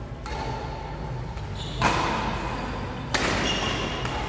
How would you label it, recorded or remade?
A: recorded